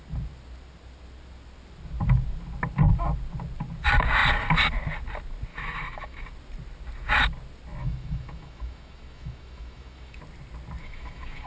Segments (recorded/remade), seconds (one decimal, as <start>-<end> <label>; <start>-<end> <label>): 0.0-5.5 recorded; 5.5-6.2 remade; 6.2-7.8 recorded; 7.8-10.2 remade; 10.2-10.8 recorded; 10.8-11.5 remade